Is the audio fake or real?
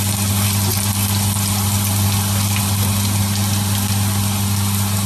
real